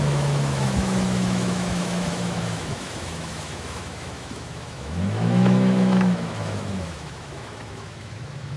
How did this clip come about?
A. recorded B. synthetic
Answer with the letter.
B